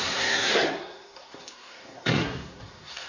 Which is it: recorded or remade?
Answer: remade